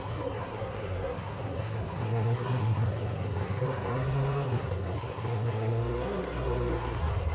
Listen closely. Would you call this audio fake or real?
fake